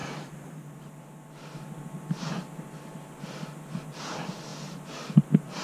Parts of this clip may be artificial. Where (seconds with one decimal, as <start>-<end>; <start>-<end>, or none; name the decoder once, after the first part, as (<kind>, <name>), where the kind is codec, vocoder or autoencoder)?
0.0-1.1 (vocoder, BigVGAN v2)